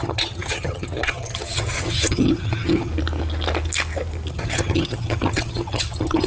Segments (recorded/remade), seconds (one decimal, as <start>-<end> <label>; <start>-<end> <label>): 0.0-2.9 remade; 2.9-4.3 recorded; 4.3-6.3 remade